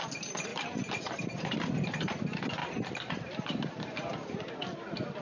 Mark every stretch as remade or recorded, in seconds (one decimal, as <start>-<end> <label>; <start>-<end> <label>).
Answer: 0.0-0.5 recorded; 0.5-1.4 remade; 1.4-2.6 recorded; 2.6-4.5 remade; 4.5-5.2 recorded